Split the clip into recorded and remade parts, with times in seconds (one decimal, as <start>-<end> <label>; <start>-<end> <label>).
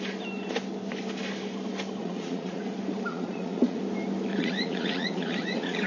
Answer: 0.0-2.0 recorded; 2.0-2.6 remade; 2.6-3.1 recorded; 3.1-3.8 remade; 3.8-4.3 recorded; 4.3-5.9 remade